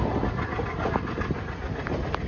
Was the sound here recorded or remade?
recorded